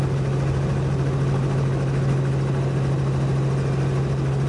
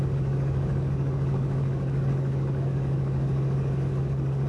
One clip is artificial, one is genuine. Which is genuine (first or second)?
first